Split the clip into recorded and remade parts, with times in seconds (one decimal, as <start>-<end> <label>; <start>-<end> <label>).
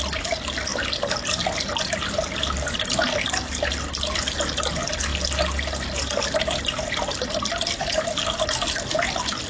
0.0-9.5 recorded